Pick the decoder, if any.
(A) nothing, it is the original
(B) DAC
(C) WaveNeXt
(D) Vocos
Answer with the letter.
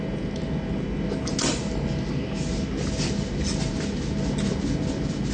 A